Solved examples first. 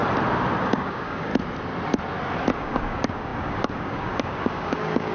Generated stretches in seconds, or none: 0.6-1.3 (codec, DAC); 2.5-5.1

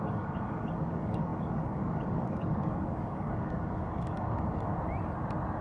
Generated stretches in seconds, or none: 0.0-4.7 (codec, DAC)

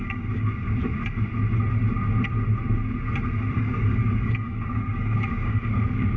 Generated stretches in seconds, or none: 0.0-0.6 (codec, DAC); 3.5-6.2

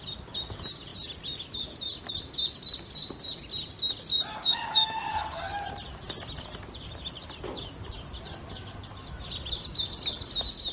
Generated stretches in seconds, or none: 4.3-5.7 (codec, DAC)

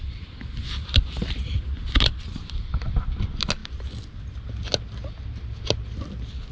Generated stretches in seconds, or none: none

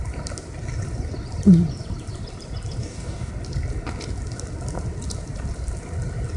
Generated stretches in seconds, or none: 2.8-3.3 (codec, DAC)